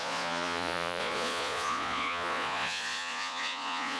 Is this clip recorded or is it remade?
remade